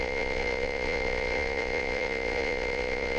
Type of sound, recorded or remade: remade